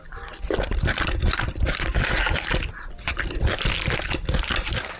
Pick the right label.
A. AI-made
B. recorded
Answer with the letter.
B